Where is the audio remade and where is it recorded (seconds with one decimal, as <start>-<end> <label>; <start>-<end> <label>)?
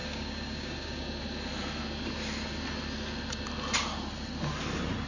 0.0-1.0 remade; 1.0-5.1 recorded